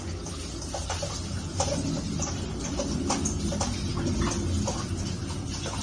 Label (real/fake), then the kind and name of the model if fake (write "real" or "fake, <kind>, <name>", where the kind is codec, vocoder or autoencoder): real